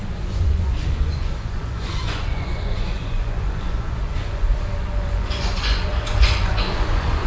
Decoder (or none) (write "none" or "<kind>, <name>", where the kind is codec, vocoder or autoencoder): vocoder, Vocos